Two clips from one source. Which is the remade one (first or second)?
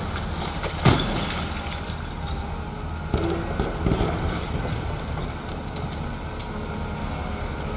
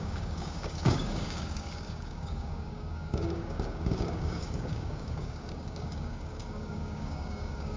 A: second